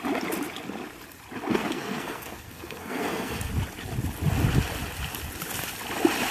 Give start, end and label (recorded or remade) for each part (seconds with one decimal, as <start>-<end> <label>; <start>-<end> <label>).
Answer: 0.0-1.5 recorded; 1.5-3.5 remade; 3.5-6.3 recorded